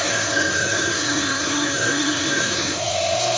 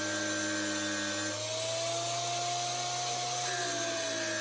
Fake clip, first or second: first